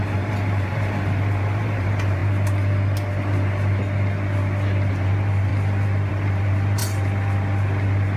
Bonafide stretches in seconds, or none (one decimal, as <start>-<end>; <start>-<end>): 2.2-4.9; 5.5-6.1; 6.8-8.2